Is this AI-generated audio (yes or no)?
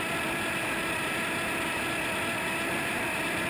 yes